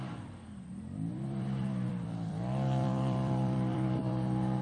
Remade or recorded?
remade